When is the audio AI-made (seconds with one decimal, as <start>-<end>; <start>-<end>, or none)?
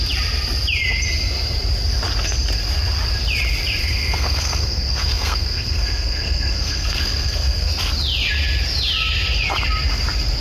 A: 3.8-7.7